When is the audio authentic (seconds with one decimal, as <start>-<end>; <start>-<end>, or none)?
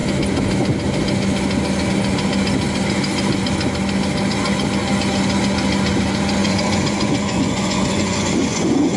0.0-6.4